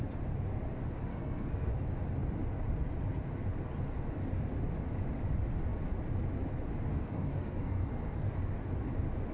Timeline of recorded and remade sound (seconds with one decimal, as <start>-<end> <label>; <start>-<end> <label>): 0.0-1.1 recorded; 1.1-1.7 remade; 1.7-6.9 recorded; 6.9-8.3 remade; 8.3-9.3 recorded